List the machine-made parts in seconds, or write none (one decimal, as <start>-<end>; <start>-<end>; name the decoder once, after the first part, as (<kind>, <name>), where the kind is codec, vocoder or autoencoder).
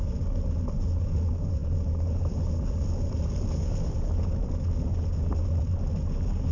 none